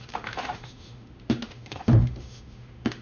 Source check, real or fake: fake